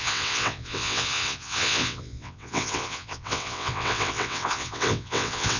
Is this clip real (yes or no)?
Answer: no